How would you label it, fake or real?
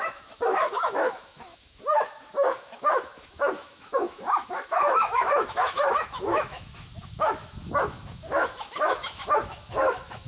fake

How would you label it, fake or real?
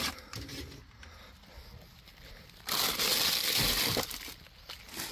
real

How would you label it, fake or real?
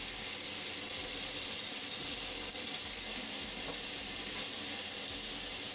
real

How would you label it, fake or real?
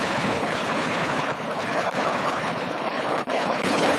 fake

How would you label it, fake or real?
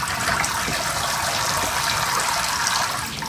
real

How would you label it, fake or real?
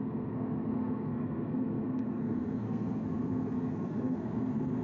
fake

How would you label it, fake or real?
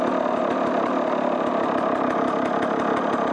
real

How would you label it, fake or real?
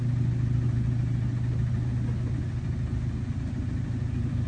real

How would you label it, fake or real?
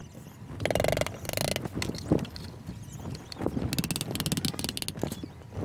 real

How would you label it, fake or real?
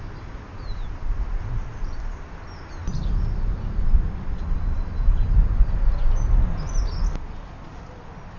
real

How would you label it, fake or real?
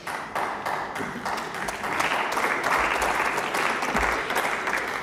real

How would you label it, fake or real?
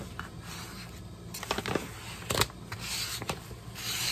real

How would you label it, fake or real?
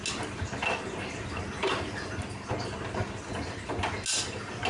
real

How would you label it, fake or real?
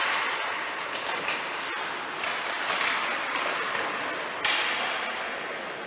real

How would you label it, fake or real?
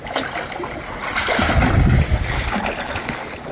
real